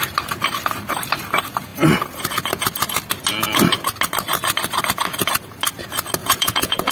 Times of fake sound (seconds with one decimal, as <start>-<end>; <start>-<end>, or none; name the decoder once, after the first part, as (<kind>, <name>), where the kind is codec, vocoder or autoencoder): 6.2-6.9 (vocoder, Vocos)